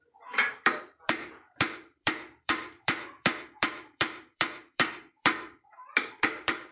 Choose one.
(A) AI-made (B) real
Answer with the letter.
A